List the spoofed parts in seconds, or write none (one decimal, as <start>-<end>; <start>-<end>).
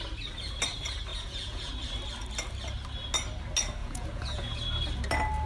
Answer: 1.1-1.7; 3.8-4.6